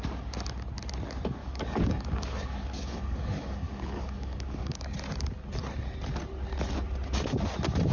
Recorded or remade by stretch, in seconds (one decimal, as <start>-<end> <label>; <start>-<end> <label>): 0.0-1.4 recorded; 1.4-4.8 remade; 4.8-7.9 recorded